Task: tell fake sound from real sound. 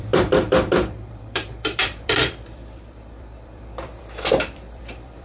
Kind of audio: fake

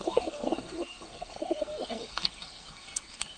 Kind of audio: fake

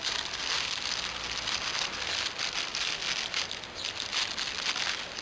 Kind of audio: real